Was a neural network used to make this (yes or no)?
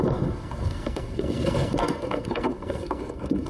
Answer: yes